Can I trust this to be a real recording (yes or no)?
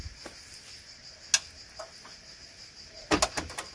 yes